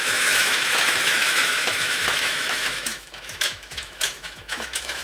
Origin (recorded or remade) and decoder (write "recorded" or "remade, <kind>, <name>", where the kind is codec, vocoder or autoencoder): remade, autoencoder, DAC-VAE